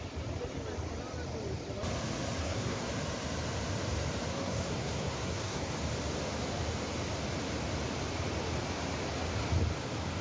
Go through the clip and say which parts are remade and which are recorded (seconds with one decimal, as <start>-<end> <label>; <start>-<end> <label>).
0.0-2.4 recorded; 2.4-2.9 remade; 2.9-4.3 recorded; 4.3-5.7 remade; 5.7-10.2 recorded